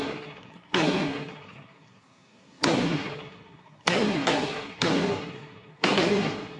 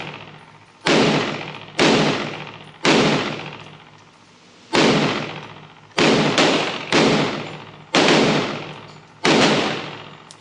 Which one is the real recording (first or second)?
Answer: second